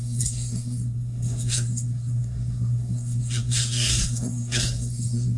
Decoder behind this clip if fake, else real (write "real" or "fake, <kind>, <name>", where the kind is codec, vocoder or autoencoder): fake, codec, SNAC